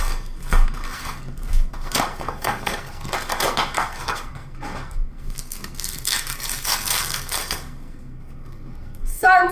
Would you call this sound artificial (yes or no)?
yes